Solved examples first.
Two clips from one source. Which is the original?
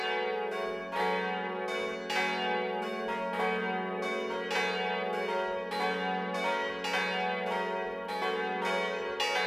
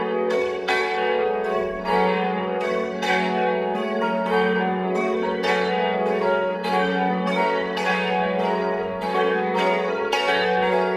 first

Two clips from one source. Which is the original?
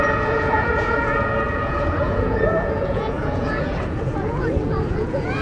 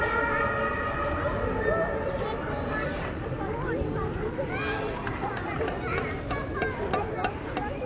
second